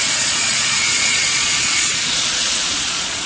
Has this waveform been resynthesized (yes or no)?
yes